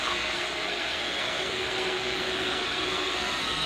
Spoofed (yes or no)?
yes